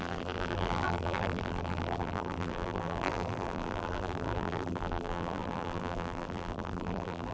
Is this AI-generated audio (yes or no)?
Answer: yes